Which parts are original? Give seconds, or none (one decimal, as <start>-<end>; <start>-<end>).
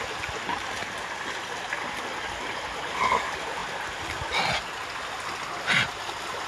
0.0-6.5